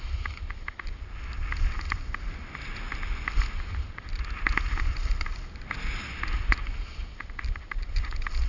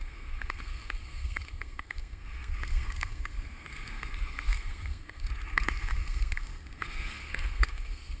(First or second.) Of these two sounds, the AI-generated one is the second